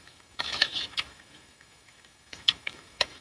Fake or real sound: fake